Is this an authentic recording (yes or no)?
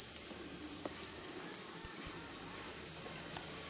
yes